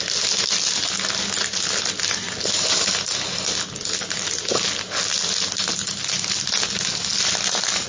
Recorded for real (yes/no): yes